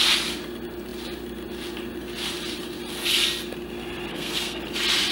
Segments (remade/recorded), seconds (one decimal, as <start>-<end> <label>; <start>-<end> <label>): 0.0-4.1 recorded; 4.1-4.6 remade; 4.6-5.1 recorded